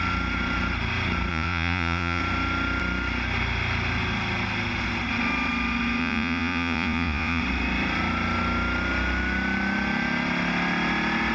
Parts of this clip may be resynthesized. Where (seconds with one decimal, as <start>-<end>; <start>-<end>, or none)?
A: 1.3-2.2; 6.0-7.4